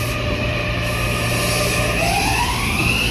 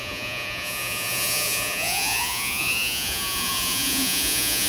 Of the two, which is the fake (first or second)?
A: second